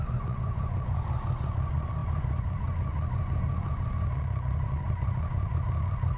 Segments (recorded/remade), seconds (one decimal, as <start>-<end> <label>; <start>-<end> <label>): 0.0-6.2 remade